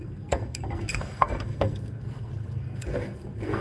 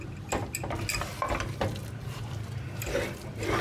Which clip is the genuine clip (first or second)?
second